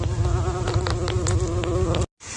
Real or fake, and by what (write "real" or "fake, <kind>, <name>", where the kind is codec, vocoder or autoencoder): real